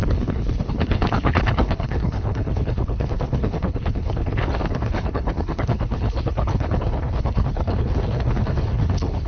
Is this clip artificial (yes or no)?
yes